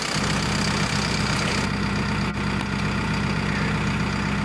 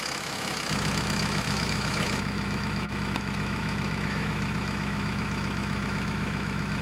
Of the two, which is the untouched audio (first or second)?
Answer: first